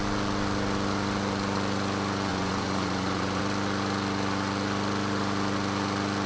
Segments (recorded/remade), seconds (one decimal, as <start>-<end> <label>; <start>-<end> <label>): 0.0-2.3 recorded; 2.3-3.4 remade; 3.4-6.3 recorded